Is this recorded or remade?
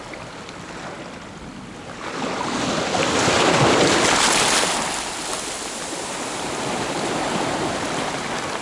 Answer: recorded